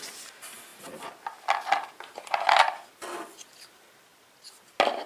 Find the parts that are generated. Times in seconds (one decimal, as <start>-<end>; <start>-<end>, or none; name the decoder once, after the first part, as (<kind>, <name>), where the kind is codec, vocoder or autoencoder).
none